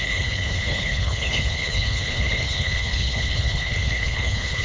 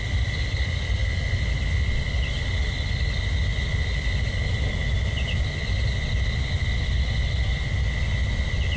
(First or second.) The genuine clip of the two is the second